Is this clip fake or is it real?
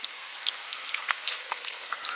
fake